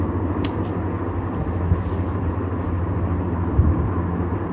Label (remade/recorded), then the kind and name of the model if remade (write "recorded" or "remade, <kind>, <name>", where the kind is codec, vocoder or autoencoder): recorded